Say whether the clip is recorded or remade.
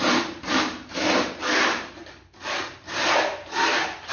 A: remade